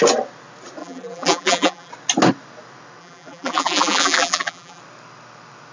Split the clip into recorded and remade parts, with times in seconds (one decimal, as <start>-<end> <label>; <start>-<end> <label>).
0.0-0.8 recorded; 0.8-1.9 remade; 1.9-3.0 recorded; 3.0-4.8 remade; 4.8-5.7 recorded